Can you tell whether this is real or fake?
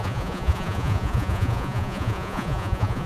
fake